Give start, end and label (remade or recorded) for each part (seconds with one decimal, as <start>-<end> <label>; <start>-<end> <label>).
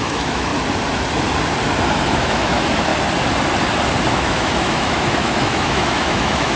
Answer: 0.0-0.5 remade; 0.5-2.1 recorded; 2.1-2.9 remade; 2.9-4.1 recorded; 4.1-6.6 remade